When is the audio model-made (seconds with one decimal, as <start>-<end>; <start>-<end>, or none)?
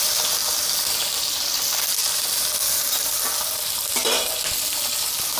none